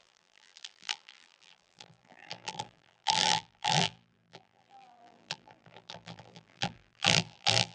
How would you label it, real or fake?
fake